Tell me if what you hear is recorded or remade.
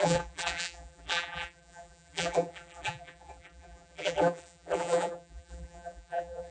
remade